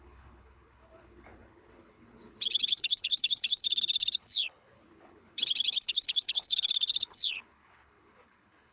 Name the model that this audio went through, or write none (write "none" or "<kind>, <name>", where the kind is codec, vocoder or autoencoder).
codec, HILCodec